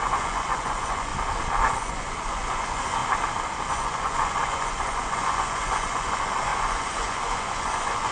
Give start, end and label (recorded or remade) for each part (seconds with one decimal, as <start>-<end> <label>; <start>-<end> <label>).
0.0-1.1 remade; 1.1-1.7 recorded; 1.7-3.0 remade; 3.0-3.7 recorded; 3.7-8.1 remade